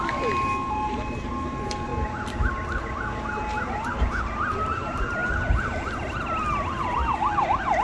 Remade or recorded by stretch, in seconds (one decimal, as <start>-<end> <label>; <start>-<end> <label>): 0.0-7.8 recorded